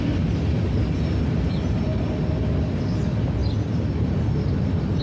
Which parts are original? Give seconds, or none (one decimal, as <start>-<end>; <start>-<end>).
0.0-5.0